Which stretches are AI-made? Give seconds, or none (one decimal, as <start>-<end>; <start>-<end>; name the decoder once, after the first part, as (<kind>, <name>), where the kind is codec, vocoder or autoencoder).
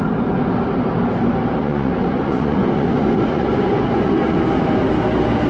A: 1.6-4.4 (vocoder, Vocos)